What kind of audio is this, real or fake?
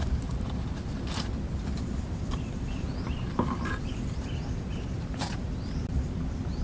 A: fake